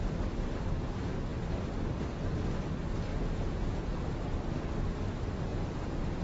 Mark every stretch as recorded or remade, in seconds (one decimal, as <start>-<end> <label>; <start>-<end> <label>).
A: 0.0-3.1 recorded; 3.1-4.1 remade; 4.1-5.5 recorded; 5.5-6.2 remade